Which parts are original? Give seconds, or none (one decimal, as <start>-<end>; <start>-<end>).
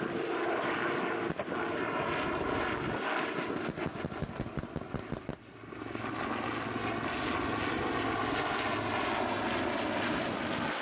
0.0-10.8